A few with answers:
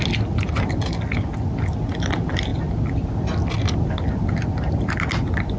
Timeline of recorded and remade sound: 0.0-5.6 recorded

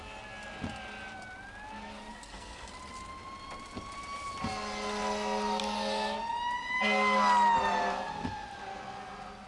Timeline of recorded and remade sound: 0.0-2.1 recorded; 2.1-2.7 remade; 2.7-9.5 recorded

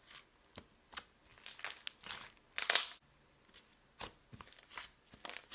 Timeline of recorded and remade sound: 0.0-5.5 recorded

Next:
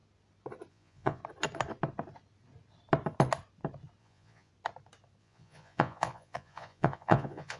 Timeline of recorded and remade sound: 0.0-0.7 recorded; 0.7-1.2 remade; 1.2-4.0 recorded; 4.0-4.5 remade; 4.5-5.2 recorded; 5.2-7.6 remade

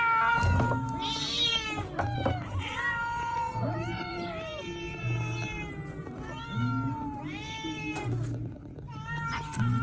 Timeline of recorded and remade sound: 0.0-1.5 recorded; 1.5-4.6 remade; 4.6-9.8 recorded

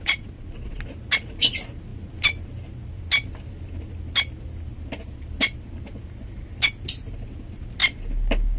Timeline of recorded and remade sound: 0.0-0.8 remade; 0.8-8.6 recorded